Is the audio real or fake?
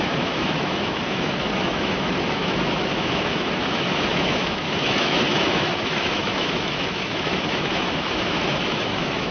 fake